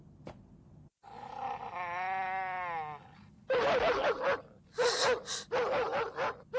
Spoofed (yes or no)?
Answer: no